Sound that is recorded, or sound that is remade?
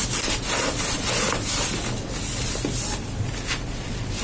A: recorded